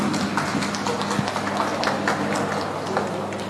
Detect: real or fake real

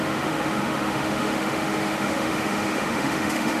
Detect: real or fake fake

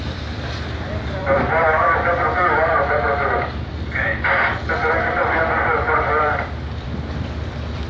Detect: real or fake fake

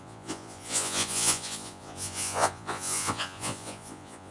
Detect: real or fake fake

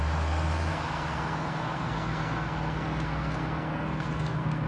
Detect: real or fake fake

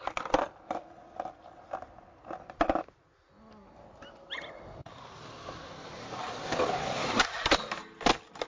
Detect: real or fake real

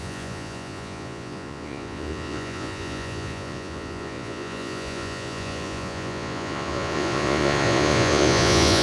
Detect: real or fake fake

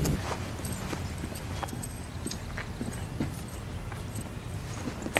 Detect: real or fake real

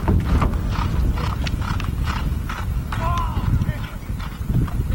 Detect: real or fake real